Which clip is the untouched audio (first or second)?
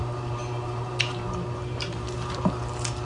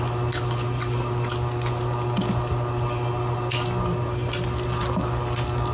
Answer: second